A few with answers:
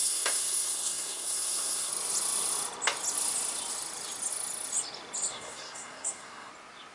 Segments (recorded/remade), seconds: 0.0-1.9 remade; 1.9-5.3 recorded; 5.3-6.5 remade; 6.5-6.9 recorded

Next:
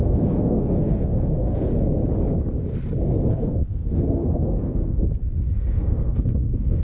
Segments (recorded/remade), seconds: 0.0-1.7 remade; 1.7-3.3 recorded; 3.3-5.0 remade; 5.0-5.5 recorded; 5.5-6.8 remade

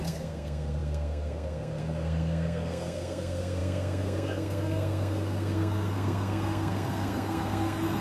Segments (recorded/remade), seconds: 0.0-8.0 remade